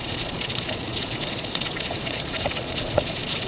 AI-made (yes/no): yes